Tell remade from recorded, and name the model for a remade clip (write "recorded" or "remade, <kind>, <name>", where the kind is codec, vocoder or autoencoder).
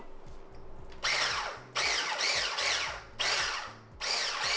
recorded